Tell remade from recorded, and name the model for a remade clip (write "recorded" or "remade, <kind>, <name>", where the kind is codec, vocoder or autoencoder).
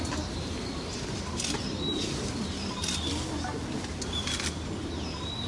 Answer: recorded